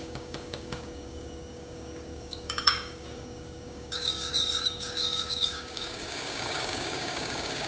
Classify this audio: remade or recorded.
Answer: remade